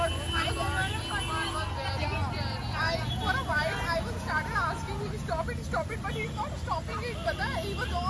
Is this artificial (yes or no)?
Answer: no